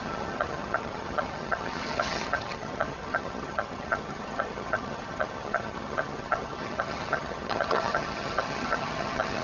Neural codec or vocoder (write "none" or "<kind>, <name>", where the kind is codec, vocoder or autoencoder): vocoder, HiFi-GAN